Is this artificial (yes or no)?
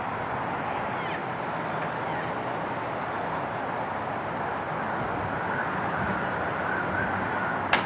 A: no